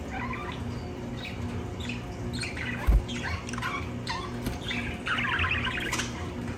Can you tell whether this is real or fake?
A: real